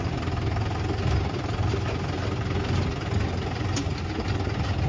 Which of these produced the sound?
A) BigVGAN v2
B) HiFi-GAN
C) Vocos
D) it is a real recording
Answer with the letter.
D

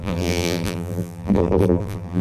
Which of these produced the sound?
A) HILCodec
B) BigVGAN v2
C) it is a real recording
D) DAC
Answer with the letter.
B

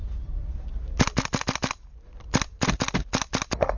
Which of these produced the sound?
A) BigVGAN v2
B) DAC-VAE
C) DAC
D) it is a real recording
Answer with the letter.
D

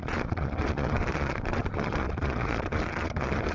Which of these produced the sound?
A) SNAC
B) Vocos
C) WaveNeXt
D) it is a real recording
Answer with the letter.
B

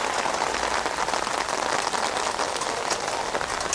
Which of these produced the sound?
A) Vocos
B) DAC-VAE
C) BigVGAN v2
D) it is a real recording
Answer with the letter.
D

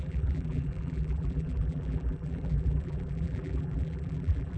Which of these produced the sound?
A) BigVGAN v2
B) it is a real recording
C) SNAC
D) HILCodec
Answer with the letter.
A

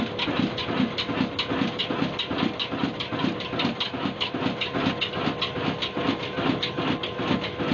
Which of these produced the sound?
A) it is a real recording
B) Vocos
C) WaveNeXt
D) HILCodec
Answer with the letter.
A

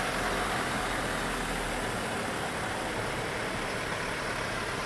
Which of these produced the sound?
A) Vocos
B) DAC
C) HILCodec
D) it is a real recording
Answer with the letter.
D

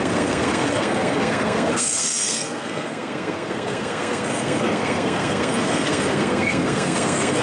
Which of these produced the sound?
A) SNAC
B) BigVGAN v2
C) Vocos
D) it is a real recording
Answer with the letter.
A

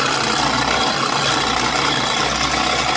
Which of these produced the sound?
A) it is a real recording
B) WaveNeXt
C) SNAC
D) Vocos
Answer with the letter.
A